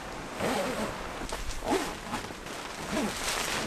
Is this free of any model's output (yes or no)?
yes